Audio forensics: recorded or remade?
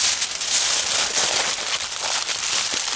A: recorded